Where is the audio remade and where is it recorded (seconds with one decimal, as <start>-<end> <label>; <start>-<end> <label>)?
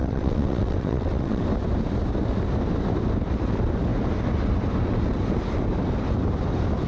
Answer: 0.0-1.4 remade; 1.4-6.9 recorded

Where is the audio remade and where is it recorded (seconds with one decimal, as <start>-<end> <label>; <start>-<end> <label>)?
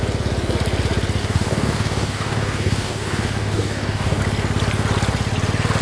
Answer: 0.0-1.2 recorded; 1.2-4.2 remade; 4.2-5.8 recorded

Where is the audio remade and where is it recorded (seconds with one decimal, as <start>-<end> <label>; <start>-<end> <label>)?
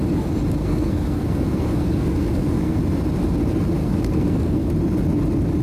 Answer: 0.0-0.6 recorded; 0.6-2.8 remade; 2.8-3.8 recorded; 3.8-4.7 remade; 4.7-5.6 recorded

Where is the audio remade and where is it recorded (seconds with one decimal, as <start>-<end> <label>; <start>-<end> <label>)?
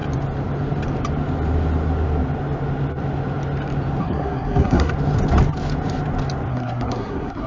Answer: 0.0-4.0 recorded; 4.0-4.9 remade; 4.9-6.5 recorded; 6.5-7.5 remade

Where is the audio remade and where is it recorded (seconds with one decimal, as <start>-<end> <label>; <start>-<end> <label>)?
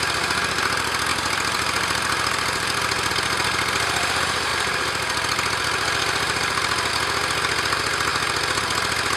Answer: 0.0-1.1 recorded; 1.1-3.1 remade; 3.1-4.5 recorded; 4.5-6.9 remade; 6.9-9.2 recorded